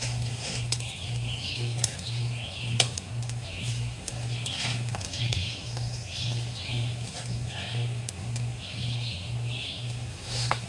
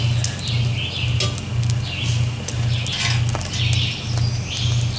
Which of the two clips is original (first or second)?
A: second